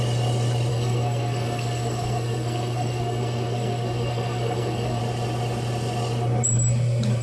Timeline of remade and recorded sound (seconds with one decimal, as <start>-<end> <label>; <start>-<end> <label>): 0.0-0.7 recorded; 0.7-5.0 remade; 5.0-7.2 recorded